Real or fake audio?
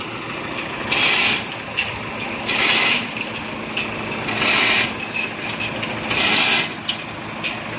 real